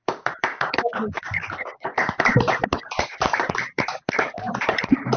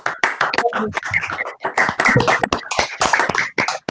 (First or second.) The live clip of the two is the second